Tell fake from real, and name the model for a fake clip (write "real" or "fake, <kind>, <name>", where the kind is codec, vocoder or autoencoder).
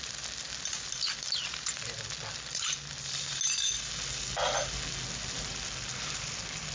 real